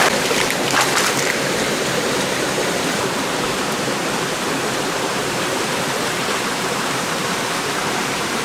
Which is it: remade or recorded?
remade